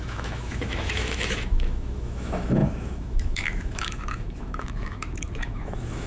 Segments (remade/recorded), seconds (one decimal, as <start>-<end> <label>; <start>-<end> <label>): 0.0-6.1 remade